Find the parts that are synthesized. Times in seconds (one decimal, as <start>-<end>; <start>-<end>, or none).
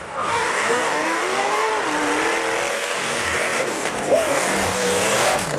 0.0-1.7; 2.7-5.6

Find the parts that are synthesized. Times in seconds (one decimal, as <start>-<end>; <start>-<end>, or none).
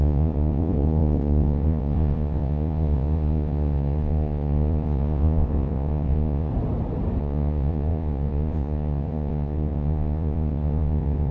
0.0-6.5; 7.2-11.3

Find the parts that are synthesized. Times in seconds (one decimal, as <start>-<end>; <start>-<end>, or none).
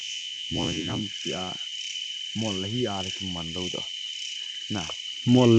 0.0-1.0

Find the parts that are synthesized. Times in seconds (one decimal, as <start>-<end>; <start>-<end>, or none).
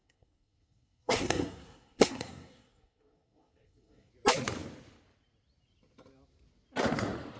0.0-4.1